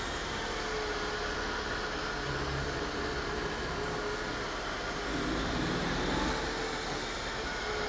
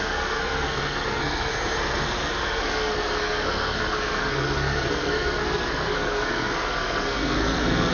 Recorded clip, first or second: first